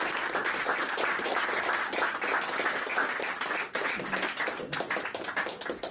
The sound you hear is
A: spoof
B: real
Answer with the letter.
B